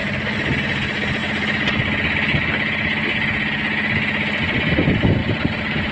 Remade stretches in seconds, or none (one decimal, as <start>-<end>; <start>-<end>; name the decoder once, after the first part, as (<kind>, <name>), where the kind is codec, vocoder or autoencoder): 0.0-0.6 (vocoder, BigVGAN v2); 5.2-5.9